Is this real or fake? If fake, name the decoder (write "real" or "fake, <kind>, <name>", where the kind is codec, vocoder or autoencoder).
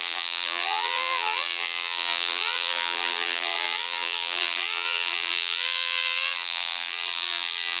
fake, vocoder, BigVGAN v2